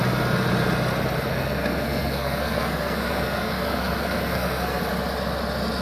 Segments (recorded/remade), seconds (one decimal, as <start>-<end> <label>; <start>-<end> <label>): 0.0-1.3 recorded; 1.3-4.8 remade; 4.8-5.8 recorded